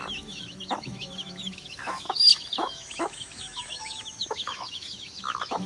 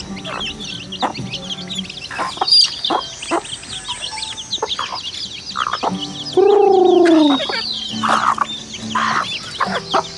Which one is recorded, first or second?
second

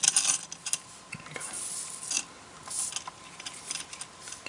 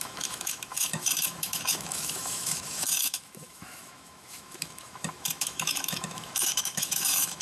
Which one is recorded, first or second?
first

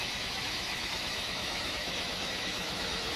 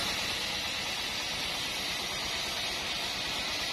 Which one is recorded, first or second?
second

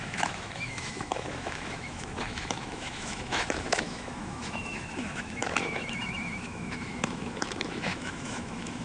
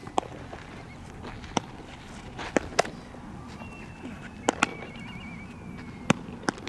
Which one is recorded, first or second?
second